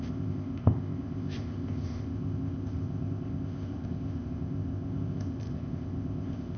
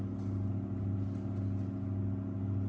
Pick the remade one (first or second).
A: first